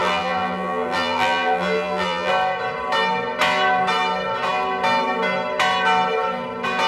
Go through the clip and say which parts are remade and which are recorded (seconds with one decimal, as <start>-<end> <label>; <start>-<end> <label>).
0.0-2.3 remade; 2.3-6.9 recorded